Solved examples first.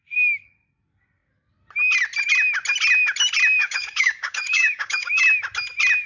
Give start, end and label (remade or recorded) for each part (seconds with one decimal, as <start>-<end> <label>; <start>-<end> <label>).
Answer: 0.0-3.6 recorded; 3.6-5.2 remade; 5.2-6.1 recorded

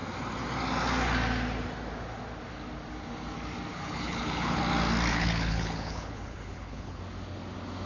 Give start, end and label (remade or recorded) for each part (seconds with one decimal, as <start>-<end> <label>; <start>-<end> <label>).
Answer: 0.0-3.7 recorded; 3.7-4.6 remade; 4.6-5.1 recorded; 5.1-7.0 remade; 7.0-7.9 recorded

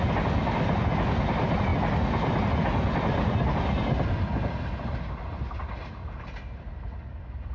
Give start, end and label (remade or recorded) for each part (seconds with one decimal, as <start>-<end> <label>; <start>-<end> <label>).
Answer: 0.0-7.5 recorded

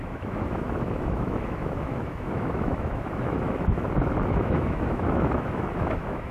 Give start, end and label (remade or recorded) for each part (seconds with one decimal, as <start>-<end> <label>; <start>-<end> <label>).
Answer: 0.0-6.3 remade